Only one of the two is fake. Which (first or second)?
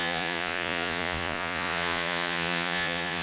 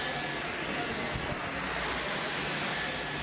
first